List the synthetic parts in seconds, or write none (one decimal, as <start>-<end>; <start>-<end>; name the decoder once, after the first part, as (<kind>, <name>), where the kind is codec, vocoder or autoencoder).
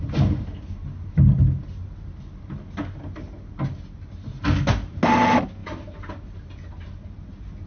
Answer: none